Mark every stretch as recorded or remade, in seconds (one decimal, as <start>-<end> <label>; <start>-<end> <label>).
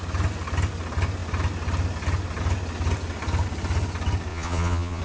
0.0-4.3 recorded; 4.3-5.0 remade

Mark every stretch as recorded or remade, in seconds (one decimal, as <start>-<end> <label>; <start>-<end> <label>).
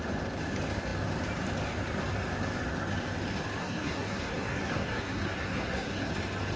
0.0-3.6 recorded; 3.6-6.1 remade; 6.1-6.6 recorded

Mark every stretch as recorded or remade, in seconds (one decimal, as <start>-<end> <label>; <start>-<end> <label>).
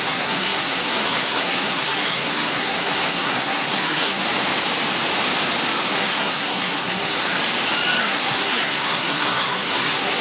0.0-4.2 remade; 4.2-5.9 recorded; 5.9-7.3 remade; 7.3-8.0 recorded; 8.0-10.2 remade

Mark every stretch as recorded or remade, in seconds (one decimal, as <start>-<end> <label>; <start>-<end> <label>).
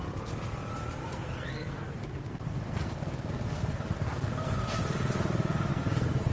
0.0-1.0 recorded; 1.0-4.8 remade; 4.8-5.7 recorded; 5.7-6.3 remade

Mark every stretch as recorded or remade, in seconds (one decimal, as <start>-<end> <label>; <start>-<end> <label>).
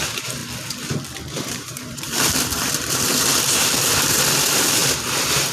0.0-0.4 remade; 0.4-1.4 recorded; 1.4-3.1 remade; 3.1-3.6 recorded; 3.6-4.8 remade; 4.8-5.5 recorded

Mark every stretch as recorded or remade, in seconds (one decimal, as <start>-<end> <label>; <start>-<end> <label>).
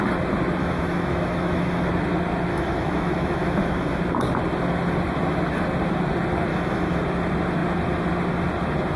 0.0-0.6 recorded; 0.6-1.9 remade; 1.9-2.5 recorded; 2.5-4.0 remade; 4.0-6.5 recorded; 6.5-7.0 remade; 7.0-9.0 recorded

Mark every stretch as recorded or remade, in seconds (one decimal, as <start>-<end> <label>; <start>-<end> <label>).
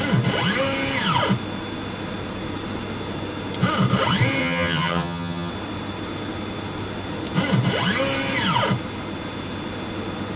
0.0-4.4 recorded; 4.4-5.5 remade; 5.5-10.4 recorded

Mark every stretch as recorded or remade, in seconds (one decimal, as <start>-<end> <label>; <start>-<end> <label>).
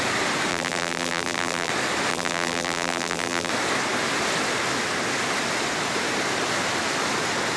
0.0-0.5 recorded; 0.5-1.7 remade; 1.7-2.1 recorded; 2.1-3.5 remade; 3.5-7.6 recorded